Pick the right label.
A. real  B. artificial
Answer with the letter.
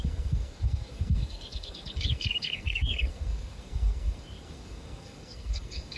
B